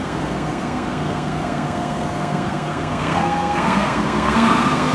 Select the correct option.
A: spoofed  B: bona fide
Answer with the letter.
A